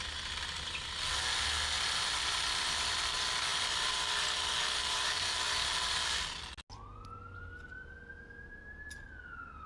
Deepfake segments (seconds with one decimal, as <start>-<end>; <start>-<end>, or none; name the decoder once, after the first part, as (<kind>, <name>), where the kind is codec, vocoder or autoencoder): 3.5-5.3 (vocoder, BigVGAN v2)